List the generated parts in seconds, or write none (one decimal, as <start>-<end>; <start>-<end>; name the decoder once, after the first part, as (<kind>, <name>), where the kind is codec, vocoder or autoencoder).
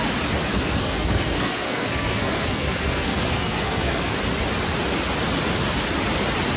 0.5-4.2 (codec, SNAC)